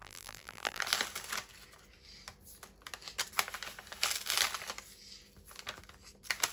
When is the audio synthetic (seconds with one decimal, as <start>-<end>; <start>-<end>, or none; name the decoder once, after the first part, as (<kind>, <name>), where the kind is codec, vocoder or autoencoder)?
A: 0.0-0.8 (vocoder, BigVGAN v2)